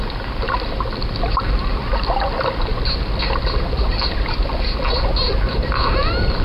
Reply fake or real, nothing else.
real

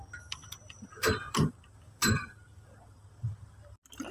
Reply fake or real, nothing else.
fake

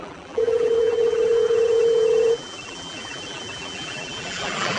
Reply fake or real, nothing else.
fake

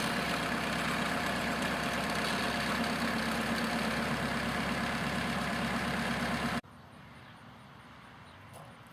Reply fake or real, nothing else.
fake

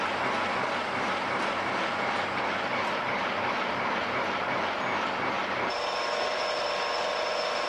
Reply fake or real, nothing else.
real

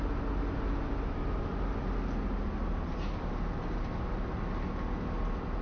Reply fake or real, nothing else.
real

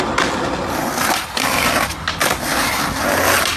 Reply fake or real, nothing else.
real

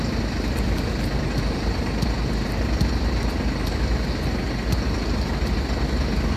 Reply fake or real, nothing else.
real